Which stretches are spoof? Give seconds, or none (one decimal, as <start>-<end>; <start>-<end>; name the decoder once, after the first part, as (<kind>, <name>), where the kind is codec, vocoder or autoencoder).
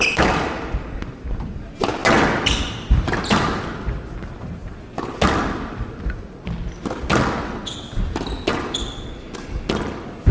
7.4-8.0 (vocoder, WaveNeXt)